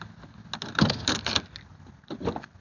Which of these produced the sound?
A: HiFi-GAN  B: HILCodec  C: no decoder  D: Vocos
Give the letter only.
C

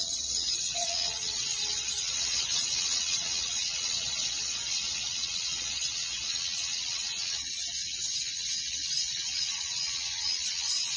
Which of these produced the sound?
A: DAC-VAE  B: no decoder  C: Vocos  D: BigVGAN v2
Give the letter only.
C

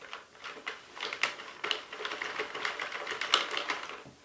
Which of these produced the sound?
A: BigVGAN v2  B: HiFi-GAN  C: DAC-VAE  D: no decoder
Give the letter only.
D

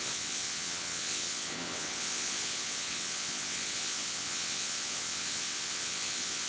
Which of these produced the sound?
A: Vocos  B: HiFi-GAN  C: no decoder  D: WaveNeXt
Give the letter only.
D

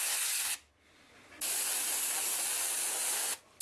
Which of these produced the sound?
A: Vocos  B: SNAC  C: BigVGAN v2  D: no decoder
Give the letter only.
D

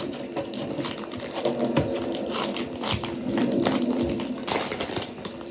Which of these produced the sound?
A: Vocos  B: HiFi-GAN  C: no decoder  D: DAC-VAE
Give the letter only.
C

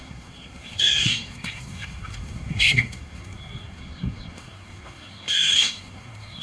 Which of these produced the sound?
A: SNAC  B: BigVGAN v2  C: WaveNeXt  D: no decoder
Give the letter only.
A